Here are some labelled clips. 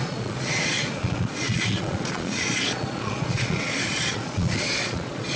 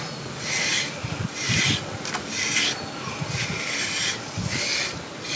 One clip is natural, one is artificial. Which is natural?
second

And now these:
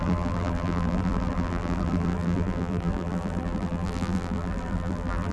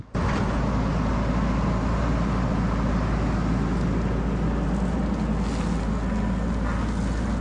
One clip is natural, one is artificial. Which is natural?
second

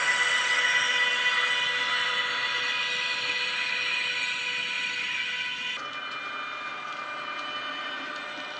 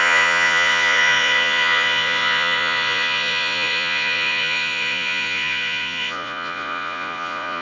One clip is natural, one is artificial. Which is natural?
first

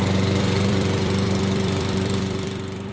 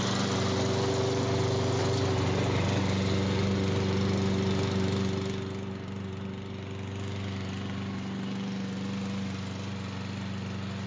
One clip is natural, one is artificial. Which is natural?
second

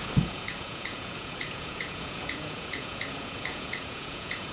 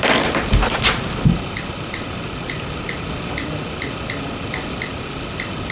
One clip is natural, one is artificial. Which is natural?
second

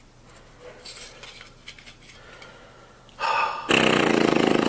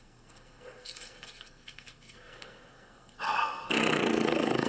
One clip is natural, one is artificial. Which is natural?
first